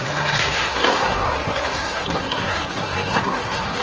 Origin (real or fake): fake